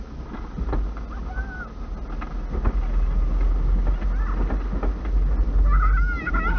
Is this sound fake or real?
real